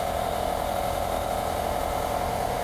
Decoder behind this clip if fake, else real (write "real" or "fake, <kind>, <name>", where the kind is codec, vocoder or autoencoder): fake, autoencoder, DAC-VAE